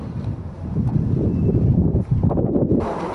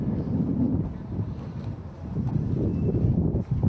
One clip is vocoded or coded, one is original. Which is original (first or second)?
second